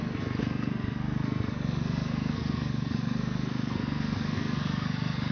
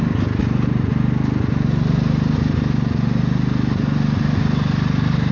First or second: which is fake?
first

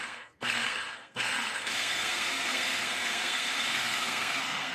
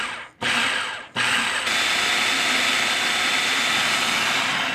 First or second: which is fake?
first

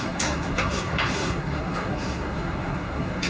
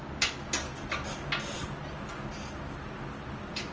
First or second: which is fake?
first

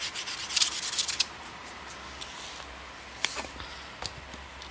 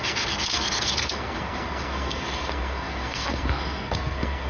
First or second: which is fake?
second